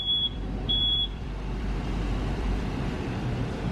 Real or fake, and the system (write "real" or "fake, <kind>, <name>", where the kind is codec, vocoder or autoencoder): fake, vocoder, BigVGAN v2